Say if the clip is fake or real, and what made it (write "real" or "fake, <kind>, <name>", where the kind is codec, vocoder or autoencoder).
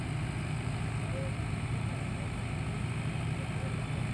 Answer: real